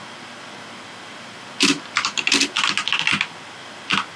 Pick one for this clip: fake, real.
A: real